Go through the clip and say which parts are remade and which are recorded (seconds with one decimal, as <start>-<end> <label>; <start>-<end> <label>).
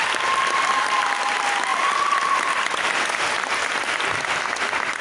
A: 0.0-5.0 recorded